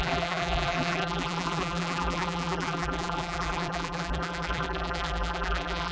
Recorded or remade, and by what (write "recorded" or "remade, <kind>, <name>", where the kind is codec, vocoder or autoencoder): remade, vocoder, BigVGAN v2